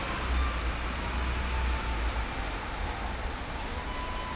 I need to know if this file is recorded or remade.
recorded